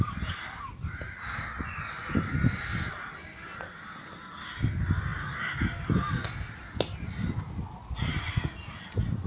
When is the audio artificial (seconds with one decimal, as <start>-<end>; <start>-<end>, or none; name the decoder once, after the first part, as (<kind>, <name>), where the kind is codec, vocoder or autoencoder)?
none